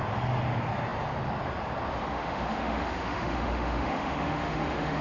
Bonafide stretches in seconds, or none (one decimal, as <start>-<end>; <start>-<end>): 0.0-2.1

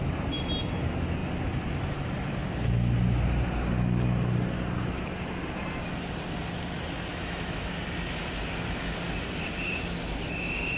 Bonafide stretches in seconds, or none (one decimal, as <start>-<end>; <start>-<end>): 0.0-7.1; 7.7-10.8

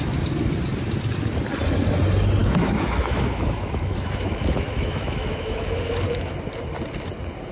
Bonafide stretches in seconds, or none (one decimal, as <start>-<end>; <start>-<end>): 0.0-2.4; 6.3-7.5

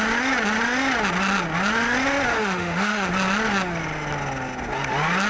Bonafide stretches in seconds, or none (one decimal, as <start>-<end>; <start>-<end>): 0.0-2.3; 3.1-5.3

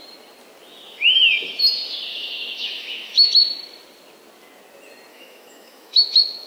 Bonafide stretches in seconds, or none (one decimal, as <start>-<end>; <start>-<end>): 0.0-2.1; 3.3-5.1

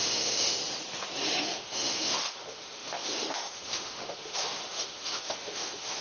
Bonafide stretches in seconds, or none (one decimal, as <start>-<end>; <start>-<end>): 0.6-1.4